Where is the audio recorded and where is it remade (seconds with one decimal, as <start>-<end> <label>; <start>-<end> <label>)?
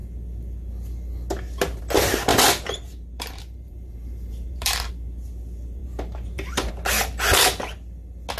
0.0-2.3 recorded; 2.3-4.9 remade; 4.9-5.8 recorded; 5.8-6.7 remade; 6.7-8.4 recorded